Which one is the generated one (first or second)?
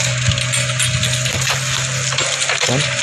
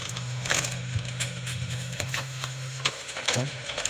second